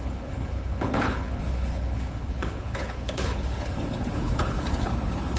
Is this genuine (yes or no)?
no